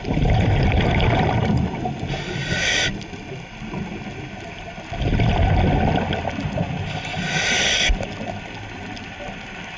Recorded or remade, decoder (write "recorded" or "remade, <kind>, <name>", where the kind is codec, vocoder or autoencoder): recorded